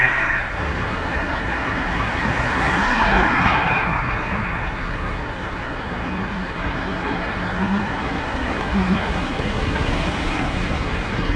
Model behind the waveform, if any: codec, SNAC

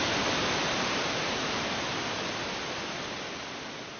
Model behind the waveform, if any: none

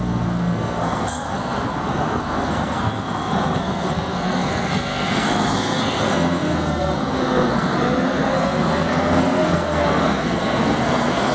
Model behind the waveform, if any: codec, SNAC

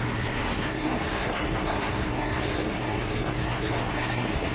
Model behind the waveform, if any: codec, SNAC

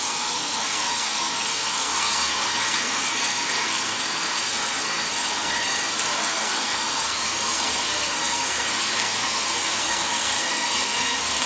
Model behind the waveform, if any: codec, SNAC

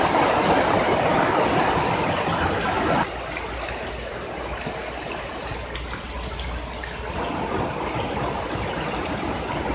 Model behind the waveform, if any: none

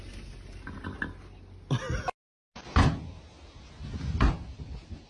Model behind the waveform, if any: none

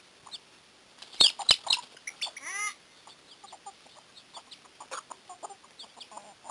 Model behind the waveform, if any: none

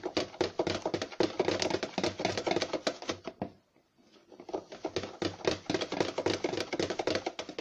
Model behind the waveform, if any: none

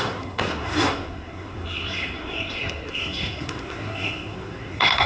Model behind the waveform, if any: codec, SNAC